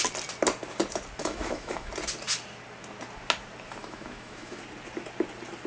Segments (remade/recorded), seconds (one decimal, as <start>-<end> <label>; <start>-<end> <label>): 0.0-1.2 recorded; 1.2-1.9 remade; 1.9-3.8 recorded; 3.8-4.6 remade; 4.6-5.7 recorded